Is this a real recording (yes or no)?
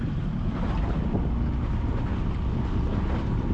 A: yes